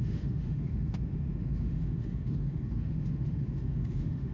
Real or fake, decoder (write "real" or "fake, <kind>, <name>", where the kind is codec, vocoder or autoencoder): fake, autoencoder, DAC-VAE